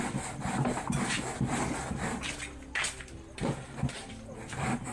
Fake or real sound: real